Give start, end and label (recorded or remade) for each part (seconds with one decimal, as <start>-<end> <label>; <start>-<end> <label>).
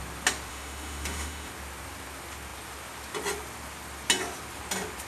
0.0-0.5 recorded; 0.5-1.5 remade; 1.5-5.1 recorded